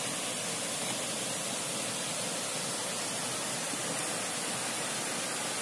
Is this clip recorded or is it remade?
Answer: recorded